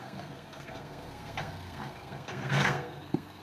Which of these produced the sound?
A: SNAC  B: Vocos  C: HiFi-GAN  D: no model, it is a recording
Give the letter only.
A